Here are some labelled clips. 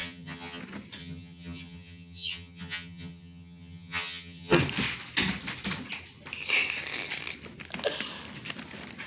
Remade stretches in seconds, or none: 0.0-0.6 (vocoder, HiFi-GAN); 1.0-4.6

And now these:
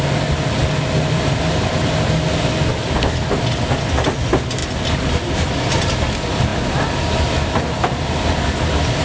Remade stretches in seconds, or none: none

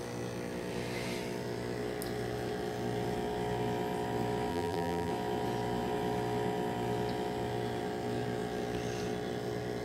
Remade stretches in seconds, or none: 4.5-5.1 (vocoder, BigVGAN v2)